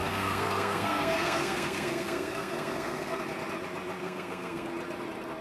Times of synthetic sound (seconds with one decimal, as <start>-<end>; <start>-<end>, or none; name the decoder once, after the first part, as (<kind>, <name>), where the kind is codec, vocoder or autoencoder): 0.0-3.2 (codec, SNAC); 4.0-4.7